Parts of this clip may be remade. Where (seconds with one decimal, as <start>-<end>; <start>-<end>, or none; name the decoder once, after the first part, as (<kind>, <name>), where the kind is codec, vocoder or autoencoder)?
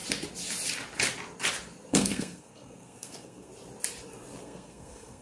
1.9-3.5 (codec, SNAC); 4.4-5.2